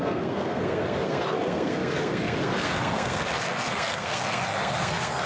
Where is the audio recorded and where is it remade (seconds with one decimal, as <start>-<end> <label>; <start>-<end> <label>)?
0.0-5.3 remade